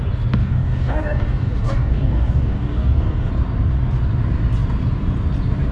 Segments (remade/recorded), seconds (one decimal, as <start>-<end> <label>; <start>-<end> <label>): 0.0-0.4 recorded; 0.4-3.3 remade; 3.3-5.7 recorded